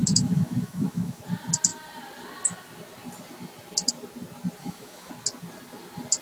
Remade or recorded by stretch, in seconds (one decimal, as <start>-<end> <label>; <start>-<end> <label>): 0.0-1.2 remade; 1.2-4.6 recorded; 4.6-5.1 remade; 5.1-6.2 recorded